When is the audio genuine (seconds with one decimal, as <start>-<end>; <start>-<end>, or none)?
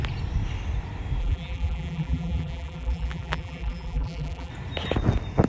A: 0.0-1.2; 4.5-5.5